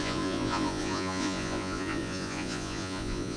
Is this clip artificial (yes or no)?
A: yes